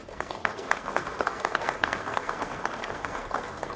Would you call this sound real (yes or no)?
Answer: no